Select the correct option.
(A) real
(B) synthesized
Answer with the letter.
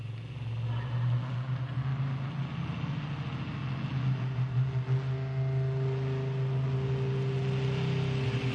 A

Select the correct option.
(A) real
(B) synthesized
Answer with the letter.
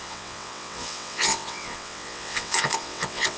B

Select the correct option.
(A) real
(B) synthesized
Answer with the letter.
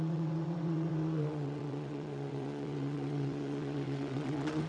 B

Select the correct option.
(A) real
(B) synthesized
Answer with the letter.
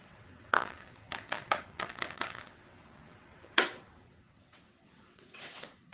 B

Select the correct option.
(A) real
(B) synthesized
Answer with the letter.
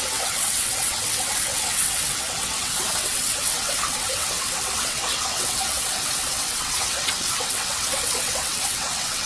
B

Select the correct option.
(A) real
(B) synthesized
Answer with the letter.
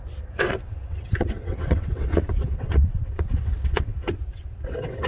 B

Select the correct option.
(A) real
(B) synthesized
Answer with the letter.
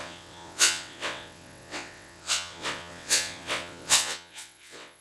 B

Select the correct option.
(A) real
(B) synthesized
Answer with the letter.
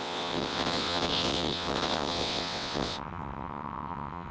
B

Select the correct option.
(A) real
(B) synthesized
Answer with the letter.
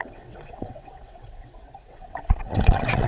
B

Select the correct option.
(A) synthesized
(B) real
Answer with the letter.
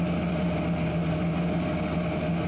B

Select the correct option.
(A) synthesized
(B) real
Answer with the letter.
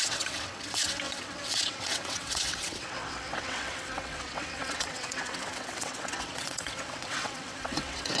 A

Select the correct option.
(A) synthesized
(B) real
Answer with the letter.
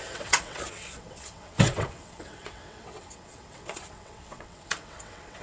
A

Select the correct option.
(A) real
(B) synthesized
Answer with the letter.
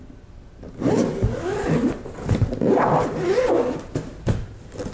A